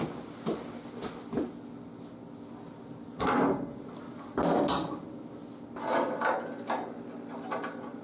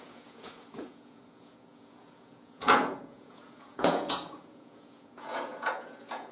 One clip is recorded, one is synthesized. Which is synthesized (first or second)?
second